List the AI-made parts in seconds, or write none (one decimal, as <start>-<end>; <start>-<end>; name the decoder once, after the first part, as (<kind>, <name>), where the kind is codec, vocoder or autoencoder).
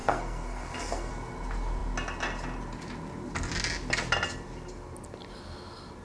0.0-1.1 (codec, SNAC)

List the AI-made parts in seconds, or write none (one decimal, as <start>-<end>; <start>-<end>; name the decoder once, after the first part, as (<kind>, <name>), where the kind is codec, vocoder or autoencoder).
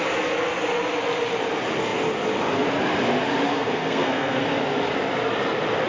3.5-4.4 (codec, SNAC)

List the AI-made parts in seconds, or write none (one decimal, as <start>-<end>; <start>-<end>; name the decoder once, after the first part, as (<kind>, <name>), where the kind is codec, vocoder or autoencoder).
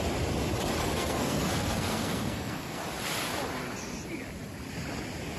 0.8-2.8 (codec, SNAC)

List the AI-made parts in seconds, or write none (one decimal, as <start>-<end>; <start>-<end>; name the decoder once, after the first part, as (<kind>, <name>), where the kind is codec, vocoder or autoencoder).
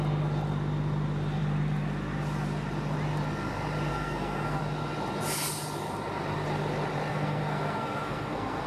3.9-4.6 (codec, SNAC); 7.1-8.7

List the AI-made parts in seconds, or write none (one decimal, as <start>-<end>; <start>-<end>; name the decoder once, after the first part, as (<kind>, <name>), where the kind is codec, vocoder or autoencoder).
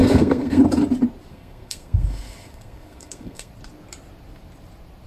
0.0-0.6 (codec, SNAC); 1.3-3.5